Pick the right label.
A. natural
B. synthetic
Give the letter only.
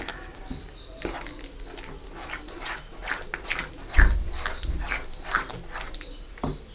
A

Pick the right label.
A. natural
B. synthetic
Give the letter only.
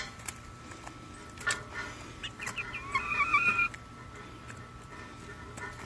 A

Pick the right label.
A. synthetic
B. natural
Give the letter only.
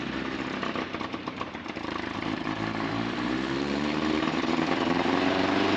A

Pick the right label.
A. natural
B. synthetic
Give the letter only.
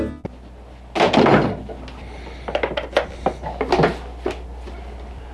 A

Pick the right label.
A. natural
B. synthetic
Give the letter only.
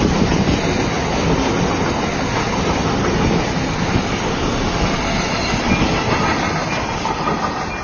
A